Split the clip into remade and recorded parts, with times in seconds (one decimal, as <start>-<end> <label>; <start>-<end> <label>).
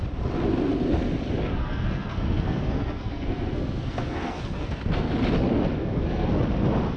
0.0-1.6 recorded; 1.6-5.1 remade; 5.1-5.8 recorded; 5.8-6.3 remade; 6.3-7.0 recorded